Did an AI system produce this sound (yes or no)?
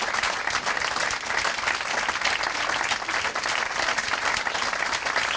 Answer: no